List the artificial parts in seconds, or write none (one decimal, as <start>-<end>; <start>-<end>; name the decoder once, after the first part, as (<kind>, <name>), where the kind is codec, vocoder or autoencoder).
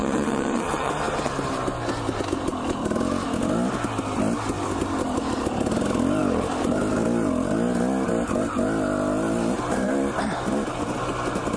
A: 0.0-0.9 (vocoder, WaveNeXt)